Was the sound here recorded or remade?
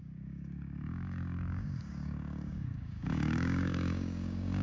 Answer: remade